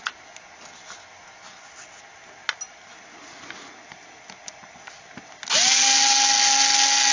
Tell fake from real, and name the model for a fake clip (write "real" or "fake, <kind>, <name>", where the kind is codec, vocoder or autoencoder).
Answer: real